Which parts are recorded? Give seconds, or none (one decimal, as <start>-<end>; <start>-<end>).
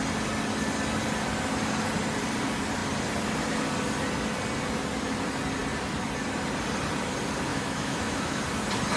0.0-7.5; 8.4-9.0